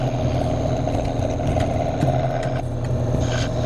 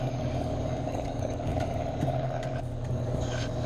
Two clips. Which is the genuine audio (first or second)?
first